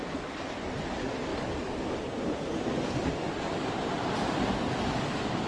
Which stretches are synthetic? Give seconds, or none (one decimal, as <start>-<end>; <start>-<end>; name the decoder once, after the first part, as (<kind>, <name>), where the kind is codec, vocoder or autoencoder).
none